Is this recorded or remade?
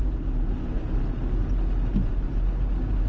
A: recorded